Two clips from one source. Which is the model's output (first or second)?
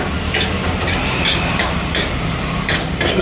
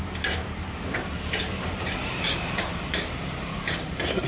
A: second